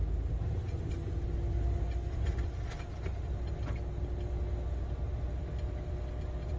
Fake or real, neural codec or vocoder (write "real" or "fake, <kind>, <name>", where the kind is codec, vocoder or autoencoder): real